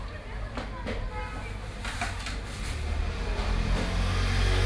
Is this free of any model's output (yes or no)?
yes